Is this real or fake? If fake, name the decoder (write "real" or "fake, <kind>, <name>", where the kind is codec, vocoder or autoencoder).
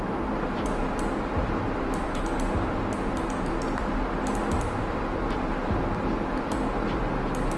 real